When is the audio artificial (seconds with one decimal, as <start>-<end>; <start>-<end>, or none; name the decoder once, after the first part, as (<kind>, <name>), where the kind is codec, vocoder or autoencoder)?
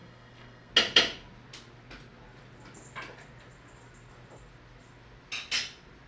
0.0-0.7 (codec, SNAC)